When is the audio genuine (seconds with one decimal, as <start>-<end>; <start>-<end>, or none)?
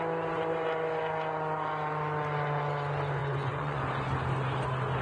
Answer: 0.0-3.2; 3.8-5.0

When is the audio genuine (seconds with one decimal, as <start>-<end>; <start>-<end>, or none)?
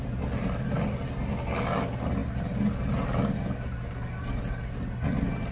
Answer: 0.0-5.5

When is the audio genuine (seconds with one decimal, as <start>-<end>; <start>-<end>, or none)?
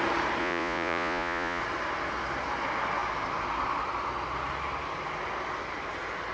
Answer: 0.0-0.4; 1.6-6.3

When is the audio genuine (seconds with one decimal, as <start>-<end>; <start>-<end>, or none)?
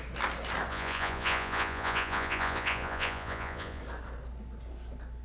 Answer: 0.0-0.7; 3.8-5.2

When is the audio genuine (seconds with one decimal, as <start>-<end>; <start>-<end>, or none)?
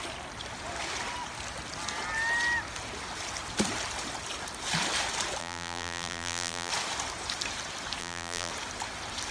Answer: 0.0-5.4; 6.7-8.0; 8.5-9.3